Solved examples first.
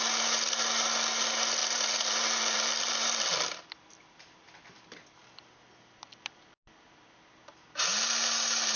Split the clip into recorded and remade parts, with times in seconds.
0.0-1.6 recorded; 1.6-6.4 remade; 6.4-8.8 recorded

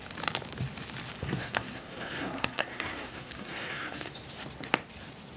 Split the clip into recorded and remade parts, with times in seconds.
0.0-1.2 recorded; 1.2-4.1 remade; 4.1-5.4 recorded

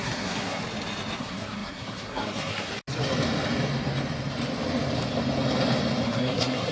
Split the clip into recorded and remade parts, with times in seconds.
0.0-0.6 remade; 0.6-1.2 recorded; 1.2-2.7 remade; 2.7-6.1 recorded; 6.1-6.7 remade

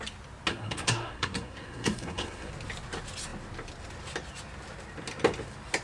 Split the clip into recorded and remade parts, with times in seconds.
0.0-0.5 recorded; 0.5-2.5 remade; 2.5-5.8 recorded

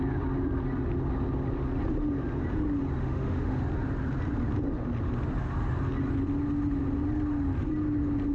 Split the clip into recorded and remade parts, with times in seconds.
0.0-3.0 recorded; 3.0-3.6 remade; 3.6-8.3 recorded

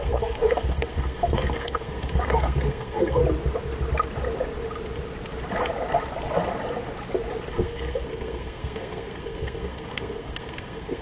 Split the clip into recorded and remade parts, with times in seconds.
0.0-3.2 remade; 3.2-7.5 recorded; 7.5-11.0 remade

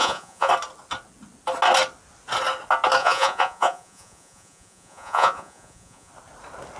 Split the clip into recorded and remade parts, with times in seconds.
0.0-0.5 remade; 0.5-3.0 recorded; 3.0-6.1 remade; 6.1-6.8 recorded

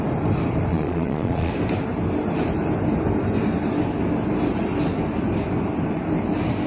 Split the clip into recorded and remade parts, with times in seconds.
0.0-0.7 recorded; 0.7-1.5 remade; 1.5-6.7 recorded